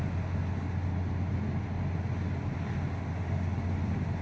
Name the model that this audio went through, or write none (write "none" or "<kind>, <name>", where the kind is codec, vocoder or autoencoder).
none